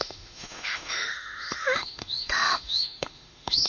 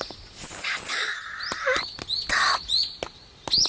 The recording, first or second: second